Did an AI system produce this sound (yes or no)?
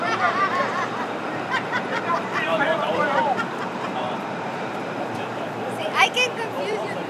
yes